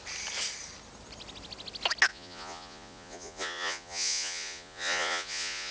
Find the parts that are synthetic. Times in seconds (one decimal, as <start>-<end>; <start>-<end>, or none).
2.1-5.7